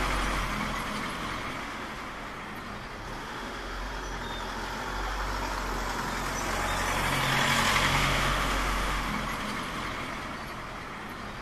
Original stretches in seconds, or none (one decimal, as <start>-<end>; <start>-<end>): 0.0-1.6; 2.3-3.2; 3.8-7.9; 9.1-11.4